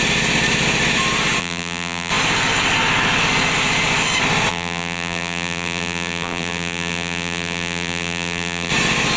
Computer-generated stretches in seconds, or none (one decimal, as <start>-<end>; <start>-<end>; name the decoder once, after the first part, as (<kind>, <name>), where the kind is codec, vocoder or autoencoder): 1.4-2.1 (vocoder, BigVGAN v2); 4.5-8.7